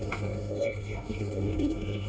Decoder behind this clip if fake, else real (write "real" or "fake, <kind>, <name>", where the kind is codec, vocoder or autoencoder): fake, codec, SNAC